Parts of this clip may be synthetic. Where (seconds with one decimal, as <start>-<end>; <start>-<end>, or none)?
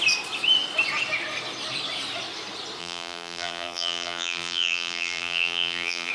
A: 2.8-6.1